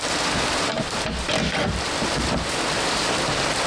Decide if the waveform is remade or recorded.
recorded